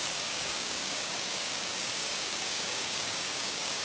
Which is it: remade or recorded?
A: remade